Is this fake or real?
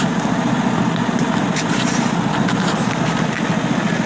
real